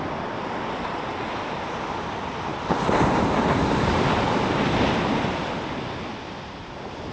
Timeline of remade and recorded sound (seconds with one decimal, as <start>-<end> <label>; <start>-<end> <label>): 0.0-2.5 recorded; 2.5-7.1 remade